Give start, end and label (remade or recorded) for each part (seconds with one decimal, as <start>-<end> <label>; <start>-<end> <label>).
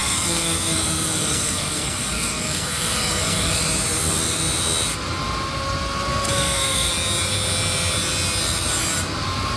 0.0-3.6 remade; 3.6-6.1 recorded; 6.1-6.9 remade; 6.9-9.6 recorded